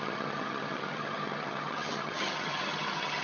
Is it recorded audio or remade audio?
remade